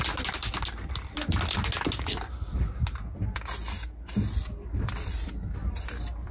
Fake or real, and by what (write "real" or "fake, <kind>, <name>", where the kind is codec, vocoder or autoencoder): real